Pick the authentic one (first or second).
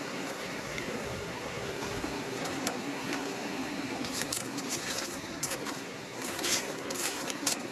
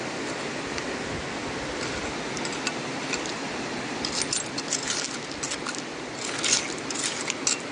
second